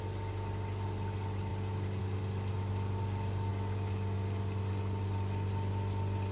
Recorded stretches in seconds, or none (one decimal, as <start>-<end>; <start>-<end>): 0.0-6.3